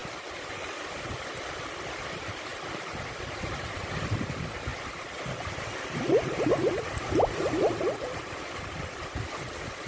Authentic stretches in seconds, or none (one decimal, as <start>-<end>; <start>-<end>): none